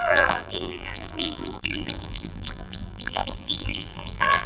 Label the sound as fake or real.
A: fake